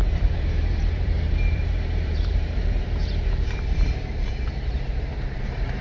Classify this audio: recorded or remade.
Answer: remade